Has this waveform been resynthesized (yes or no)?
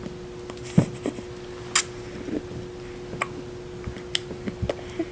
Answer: no